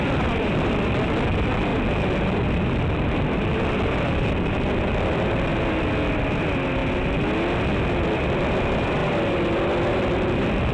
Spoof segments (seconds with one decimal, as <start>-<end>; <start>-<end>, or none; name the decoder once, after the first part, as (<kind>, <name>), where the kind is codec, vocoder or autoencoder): 0.0-5.5 (vocoder, BigVGAN v2); 6.1-6.8; 8.0-9.0; 9.9-10.7